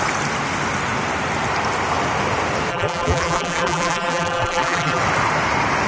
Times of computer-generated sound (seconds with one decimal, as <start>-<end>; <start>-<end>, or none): 2.7-5.0